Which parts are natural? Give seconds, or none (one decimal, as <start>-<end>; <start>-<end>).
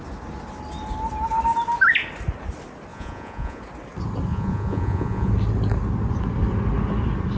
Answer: 0.0-2.9; 3.6-4.3; 5.3-7.4